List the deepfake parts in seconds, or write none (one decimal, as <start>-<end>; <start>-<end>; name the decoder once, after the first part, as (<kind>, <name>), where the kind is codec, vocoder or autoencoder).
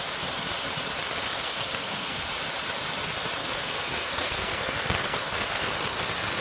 1.2-2.2 (codec, SNAC); 3.4-5.7